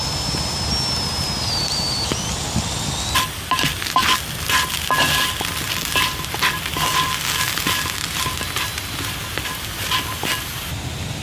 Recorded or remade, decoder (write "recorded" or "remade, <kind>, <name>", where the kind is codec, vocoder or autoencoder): recorded